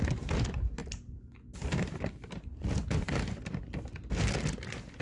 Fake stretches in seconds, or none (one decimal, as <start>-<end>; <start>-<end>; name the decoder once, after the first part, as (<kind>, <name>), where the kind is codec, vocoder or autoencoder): none